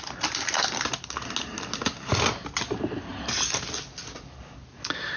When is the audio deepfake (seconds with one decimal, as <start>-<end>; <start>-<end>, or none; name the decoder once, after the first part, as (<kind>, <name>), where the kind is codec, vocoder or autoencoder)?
none